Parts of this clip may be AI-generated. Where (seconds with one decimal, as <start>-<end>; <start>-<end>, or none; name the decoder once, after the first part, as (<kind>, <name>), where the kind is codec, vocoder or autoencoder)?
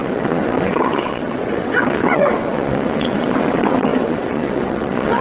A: 0.0-5.2 (vocoder, WaveNeXt)